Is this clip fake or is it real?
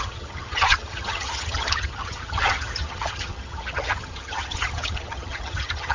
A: fake